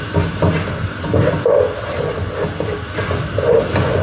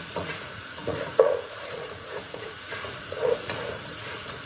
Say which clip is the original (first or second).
first